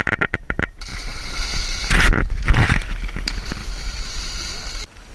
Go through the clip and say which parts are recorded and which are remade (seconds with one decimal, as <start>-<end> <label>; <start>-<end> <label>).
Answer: 0.0-5.1 recorded